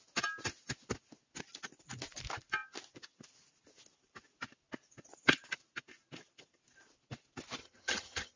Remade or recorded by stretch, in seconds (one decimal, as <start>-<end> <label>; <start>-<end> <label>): 0.0-7.6 recorded; 7.6-8.4 remade